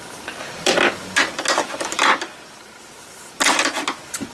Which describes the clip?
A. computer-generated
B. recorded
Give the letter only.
B